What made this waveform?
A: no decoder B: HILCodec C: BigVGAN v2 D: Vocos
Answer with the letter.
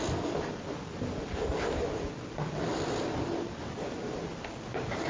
A